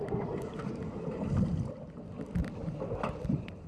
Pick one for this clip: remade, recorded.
recorded